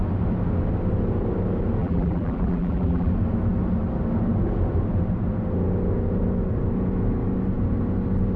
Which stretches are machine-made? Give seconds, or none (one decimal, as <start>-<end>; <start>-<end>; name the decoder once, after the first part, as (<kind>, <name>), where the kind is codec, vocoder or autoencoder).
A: 1.8-3.1 (vocoder, BigVGAN v2)